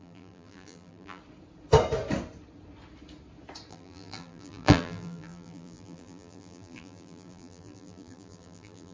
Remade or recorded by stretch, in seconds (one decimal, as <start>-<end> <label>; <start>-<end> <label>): 0.0-1.2 remade; 1.2-3.7 recorded; 3.7-8.9 remade